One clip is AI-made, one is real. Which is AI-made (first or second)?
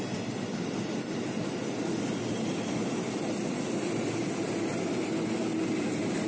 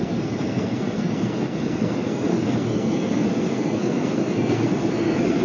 second